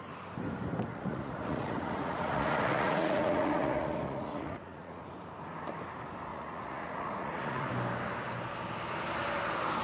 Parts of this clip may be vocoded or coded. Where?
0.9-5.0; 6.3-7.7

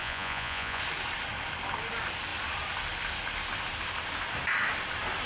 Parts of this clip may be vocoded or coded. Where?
0.0-0.8